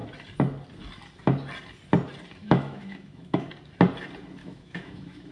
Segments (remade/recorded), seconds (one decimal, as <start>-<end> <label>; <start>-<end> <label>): 0.0-2.4 recorded; 2.4-3.5 remade; 3.5-4.4 recorded; 4.4-5.3 remade